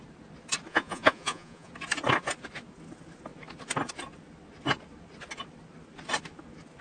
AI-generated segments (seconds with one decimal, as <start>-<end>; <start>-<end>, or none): 0.7-1.7